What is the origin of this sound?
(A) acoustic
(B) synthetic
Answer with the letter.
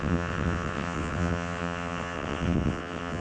B